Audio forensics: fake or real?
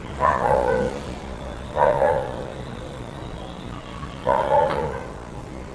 fake